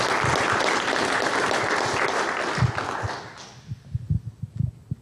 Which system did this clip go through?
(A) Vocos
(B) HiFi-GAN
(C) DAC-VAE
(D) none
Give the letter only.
D